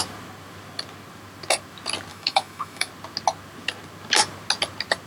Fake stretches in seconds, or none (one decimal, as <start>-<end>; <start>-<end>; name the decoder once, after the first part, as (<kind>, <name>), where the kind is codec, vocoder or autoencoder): 2.1-2.9 (autoencoder, DAC-VAE)